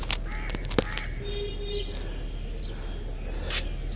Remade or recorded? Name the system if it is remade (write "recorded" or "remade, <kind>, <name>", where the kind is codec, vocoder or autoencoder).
recorded